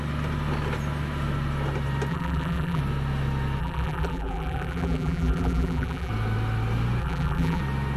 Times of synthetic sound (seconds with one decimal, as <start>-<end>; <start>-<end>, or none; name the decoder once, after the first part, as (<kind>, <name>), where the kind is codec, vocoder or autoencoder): 2.1-2.8 (vocoder, BigVGAN v2); 3.6-6.1; 7.0-7.6